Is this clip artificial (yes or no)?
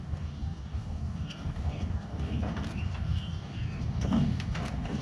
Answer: yes